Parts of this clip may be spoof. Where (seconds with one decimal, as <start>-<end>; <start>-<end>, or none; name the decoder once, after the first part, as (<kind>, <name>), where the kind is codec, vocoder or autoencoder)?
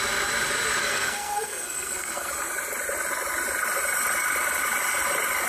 0.8-2.3 (codec, SNAC)